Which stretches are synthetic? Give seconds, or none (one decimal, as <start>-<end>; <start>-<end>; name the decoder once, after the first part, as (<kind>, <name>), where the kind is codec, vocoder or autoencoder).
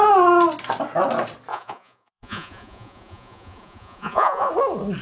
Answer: 1.5-4.5 (vocoder, Vocos)